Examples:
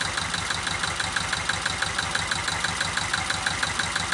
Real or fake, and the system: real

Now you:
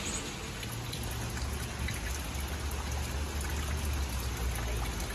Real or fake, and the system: real